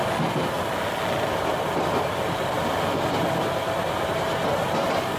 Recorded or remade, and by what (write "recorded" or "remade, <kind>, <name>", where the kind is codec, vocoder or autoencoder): recorded